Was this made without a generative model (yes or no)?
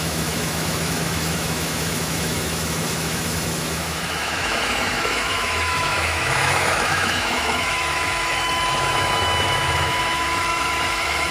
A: no